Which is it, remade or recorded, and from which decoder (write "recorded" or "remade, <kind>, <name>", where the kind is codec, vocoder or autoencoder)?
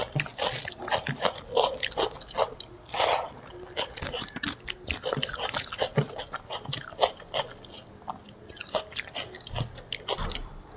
recorded